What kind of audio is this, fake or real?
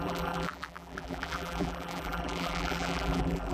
fake